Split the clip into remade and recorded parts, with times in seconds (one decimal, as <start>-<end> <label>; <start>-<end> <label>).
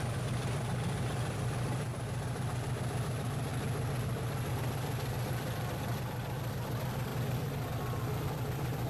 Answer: 0.0-3.5 remade; 3.5-4.5 recorded; 4.5-8.9 remade